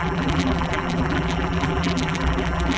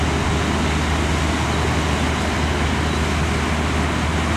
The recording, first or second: second